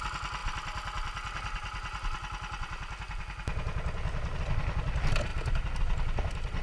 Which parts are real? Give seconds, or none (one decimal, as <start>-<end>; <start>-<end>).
0.0-6.6